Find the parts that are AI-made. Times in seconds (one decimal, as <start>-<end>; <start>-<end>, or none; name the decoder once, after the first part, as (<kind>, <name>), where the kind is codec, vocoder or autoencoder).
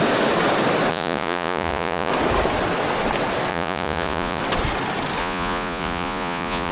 0.9-2.1 (vocoder, Vocos); 3.5-4.4; 5.2-6.7